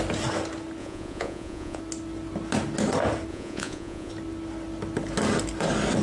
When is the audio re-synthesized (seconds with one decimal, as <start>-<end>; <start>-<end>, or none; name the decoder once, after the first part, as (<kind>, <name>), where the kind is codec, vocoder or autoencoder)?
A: 0.8-1.8 (vocoder, Vocos); 3.3-4.1